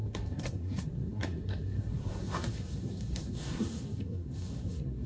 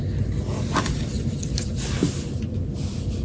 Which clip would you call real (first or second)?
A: second